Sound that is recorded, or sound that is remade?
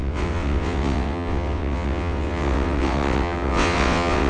remade